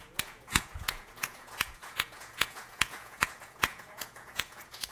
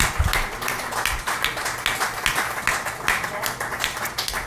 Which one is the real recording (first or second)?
second